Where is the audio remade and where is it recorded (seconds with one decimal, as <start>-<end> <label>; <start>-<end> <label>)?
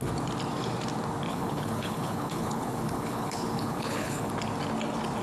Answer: 0.0-1.3 recorded; 1.3-4.3 remade; 4.3-5.2 recorded